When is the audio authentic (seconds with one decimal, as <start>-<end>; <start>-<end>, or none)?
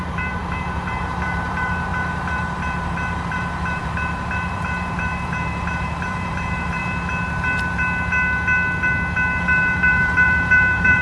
6.8-9.4